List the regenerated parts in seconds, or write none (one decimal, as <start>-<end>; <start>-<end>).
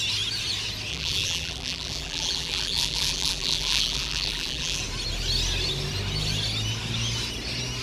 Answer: 0.9-4.8